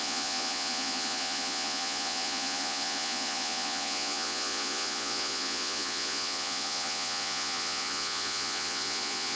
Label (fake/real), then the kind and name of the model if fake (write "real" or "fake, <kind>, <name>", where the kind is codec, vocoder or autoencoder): fake, vocoder, Vocos